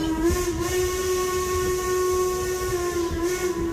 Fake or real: real